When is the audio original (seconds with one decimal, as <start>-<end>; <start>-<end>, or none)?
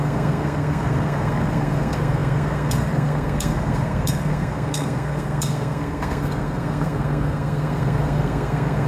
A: none